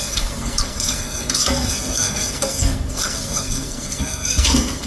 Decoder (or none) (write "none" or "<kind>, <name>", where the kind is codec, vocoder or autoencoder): codec, SNAC